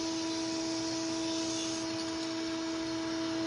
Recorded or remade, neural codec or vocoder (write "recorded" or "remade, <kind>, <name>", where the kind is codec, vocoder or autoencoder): recorded